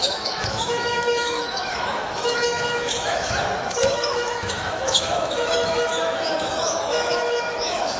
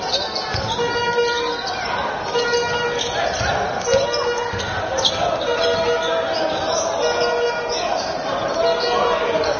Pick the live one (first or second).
second